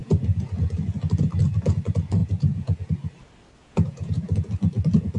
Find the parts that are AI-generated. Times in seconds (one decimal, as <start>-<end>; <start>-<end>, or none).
0.0-0.5; 2.2-2.9; 3.6-4.2